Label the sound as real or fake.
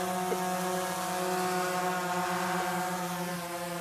real